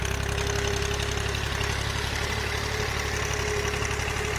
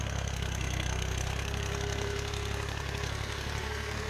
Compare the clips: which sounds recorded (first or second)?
first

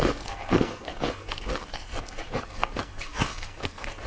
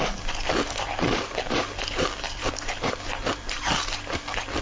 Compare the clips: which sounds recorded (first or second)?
second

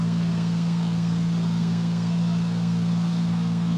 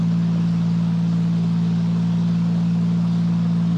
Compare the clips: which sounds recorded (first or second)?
second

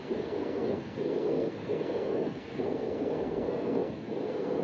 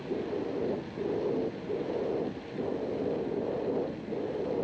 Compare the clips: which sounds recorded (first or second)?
second